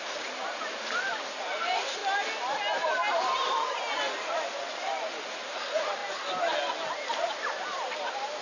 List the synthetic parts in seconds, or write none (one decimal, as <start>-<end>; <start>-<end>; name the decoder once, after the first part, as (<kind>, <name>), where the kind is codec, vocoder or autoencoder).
0.0-2.0 (vocoder, BigVGAN v2); 5.2-6.0